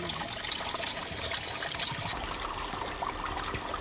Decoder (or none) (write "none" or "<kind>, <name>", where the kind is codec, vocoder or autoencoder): none